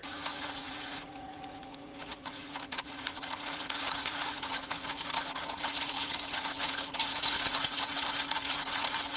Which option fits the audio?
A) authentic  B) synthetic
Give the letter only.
B